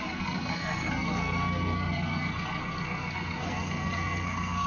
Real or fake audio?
fake